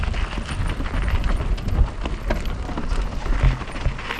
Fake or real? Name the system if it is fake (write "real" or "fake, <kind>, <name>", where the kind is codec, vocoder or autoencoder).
real